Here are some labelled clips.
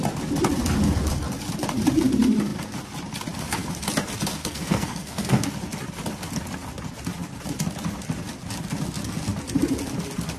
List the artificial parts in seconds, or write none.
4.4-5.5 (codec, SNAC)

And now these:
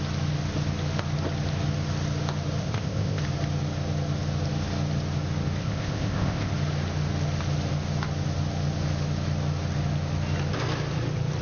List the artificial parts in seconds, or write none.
2.6-3.2 (codec, ZipCodec); 5.6-6.5

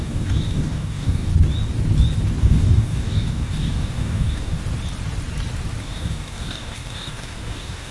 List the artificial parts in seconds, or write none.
0.0-1.3 (codec, DAC); 2.4-4.6; 5.8-7.9

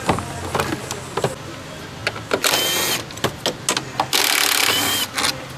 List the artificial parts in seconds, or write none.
none

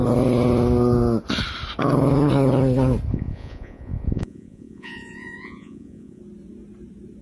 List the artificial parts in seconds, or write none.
3.1-6.2 (vocoder, Vocos)

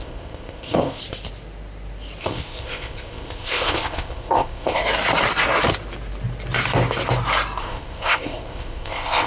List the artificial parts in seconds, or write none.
0.0-1.0 (codec, ZipCodec); 2.2-4.8; 7.6-9.3

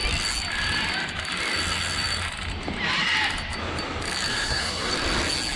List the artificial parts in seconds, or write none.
4.3-4.9 (codec, SNAC)

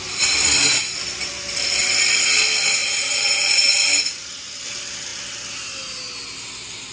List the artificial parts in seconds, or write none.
0.0-5.1 (vocoder, BigVGAN v2); 6.4-6.9